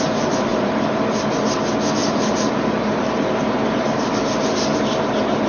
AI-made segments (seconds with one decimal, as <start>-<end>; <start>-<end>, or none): 0.5-1.0; 2.0-5.5